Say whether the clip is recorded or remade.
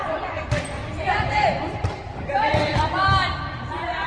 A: remade